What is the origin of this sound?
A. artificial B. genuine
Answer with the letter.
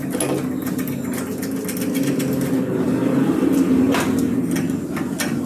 B